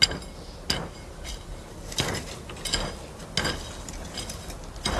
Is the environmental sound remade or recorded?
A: recorded